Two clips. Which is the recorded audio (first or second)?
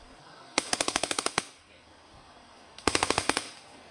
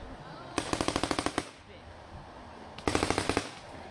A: second